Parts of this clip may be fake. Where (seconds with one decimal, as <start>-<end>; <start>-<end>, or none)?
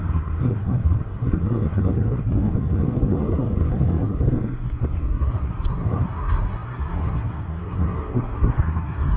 0.0-9.2